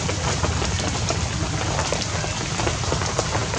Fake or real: real